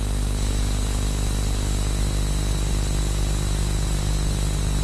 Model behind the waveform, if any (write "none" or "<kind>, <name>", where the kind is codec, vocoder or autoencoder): none